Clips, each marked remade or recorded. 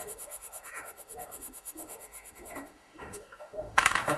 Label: remade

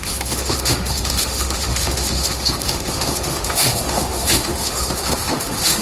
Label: remade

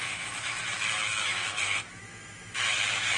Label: remade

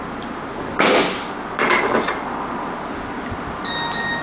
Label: recorded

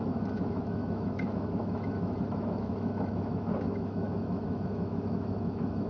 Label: remade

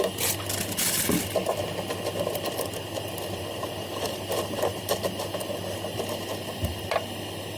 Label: recorded